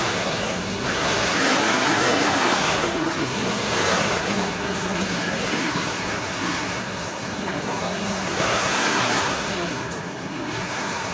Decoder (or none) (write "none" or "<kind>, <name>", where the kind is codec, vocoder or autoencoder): codec, SNAC